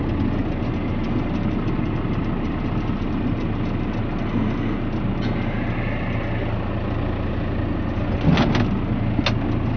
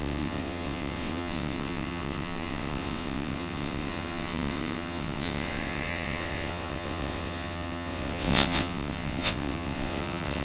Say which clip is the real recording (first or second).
first